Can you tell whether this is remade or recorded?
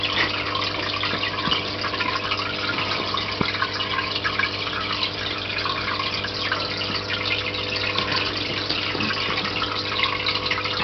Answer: recorded